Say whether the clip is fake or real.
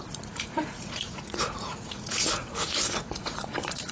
fake